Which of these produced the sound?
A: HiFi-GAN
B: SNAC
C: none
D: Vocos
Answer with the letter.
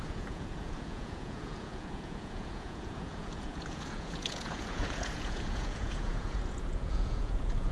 D